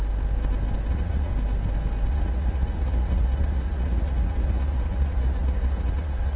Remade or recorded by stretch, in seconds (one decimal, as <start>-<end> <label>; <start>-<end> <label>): 0.0-0.9 recorded; 0.9-1.3 remade; 1.3-2.1 recorded; 2.1-6.4 remade